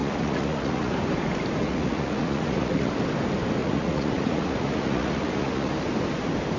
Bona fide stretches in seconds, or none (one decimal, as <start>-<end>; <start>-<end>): 0.9-1.6; 2.9-3.6; 5.7-6.6